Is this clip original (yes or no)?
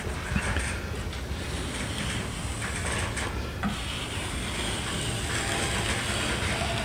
yes